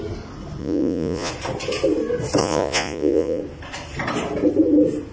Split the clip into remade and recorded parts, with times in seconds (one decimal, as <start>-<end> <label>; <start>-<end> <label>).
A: 0.0-0.6 recorded; 0.6-1.3 remade; 1.3-2.4 recorded; 2.4-3.4 remade; 3.4-5.1 recorded